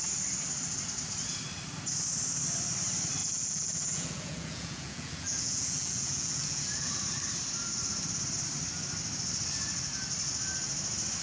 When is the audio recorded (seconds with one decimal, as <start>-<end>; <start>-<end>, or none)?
0.0-3.2; 6.9-11.2